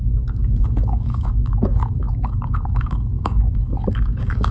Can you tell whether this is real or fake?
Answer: fake